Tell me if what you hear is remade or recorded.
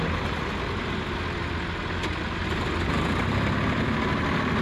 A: recorded